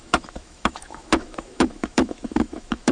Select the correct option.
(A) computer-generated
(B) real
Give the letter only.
A